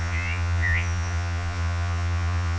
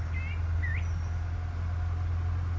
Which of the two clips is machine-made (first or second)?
first